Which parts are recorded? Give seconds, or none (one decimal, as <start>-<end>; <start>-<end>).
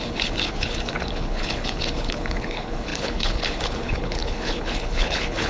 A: none